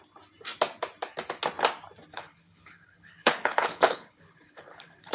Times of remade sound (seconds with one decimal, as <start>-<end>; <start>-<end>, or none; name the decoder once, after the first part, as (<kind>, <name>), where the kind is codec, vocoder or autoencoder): 2.1-5.1 (codec, HILCodec)